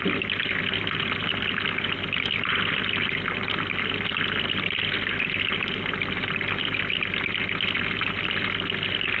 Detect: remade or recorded recorded